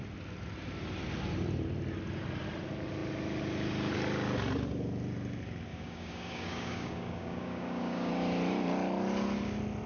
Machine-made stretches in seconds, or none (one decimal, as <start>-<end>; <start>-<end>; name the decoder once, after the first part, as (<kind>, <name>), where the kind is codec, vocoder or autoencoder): 5.7-8.1 (codec, DAC)